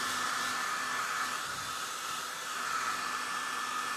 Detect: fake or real real